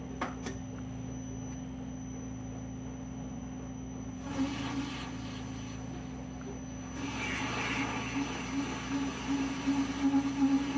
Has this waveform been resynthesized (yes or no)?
no